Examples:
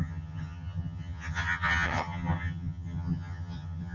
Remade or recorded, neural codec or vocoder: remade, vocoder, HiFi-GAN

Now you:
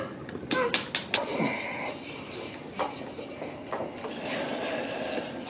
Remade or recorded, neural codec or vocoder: recorded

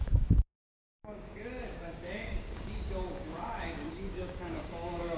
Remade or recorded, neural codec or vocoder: remade, codec, DAC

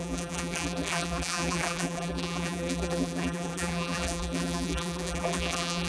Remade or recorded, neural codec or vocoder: remade, vocoder, BigVGAN v2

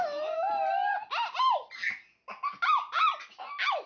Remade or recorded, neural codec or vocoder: recorded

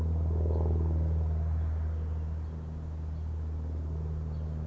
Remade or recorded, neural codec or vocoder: recorded